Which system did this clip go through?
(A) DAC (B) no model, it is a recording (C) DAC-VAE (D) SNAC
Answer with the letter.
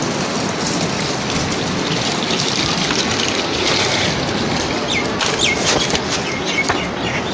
B